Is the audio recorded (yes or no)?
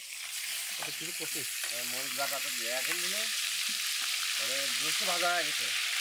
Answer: yes